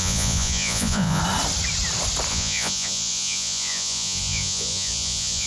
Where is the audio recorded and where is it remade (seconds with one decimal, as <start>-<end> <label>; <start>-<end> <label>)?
0.0-1.2 remade; 1.2-2.3 recorded; 2.3-5.5 remade